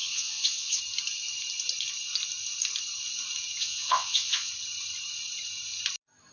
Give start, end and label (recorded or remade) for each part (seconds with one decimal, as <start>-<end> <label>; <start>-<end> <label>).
0.0-0.8 remade; 0.8-3.6 recorded; 3.6-4.5 remade; 4.5-6.3 recorded